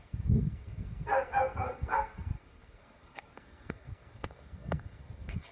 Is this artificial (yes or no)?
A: yes